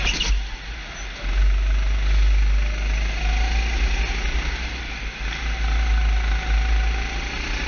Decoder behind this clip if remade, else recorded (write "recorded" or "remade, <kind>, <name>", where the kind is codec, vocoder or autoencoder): recorded